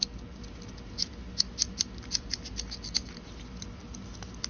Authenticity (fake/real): real